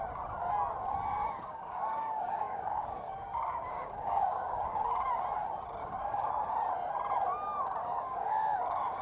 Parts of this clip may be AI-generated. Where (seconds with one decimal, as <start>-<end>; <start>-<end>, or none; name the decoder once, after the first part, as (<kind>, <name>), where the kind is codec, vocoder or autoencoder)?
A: 1.2-5.1 (codec, DAC); 5.8-6.3; 7.8-9.0